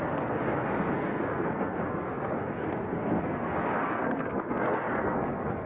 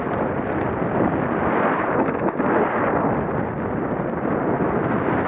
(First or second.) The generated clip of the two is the first